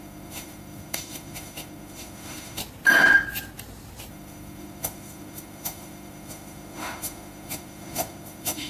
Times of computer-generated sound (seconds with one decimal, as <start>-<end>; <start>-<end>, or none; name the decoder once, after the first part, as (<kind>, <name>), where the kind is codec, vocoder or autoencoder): 0.0-2.6 (autoencoder, DAC-VAE); 4.1-8.7